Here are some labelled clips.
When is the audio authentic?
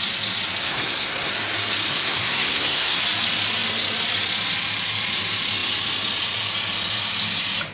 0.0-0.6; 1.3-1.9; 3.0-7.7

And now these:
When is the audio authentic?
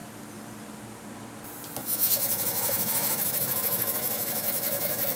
0.0-1.8